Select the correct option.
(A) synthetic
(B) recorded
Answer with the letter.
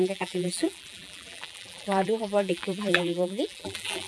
A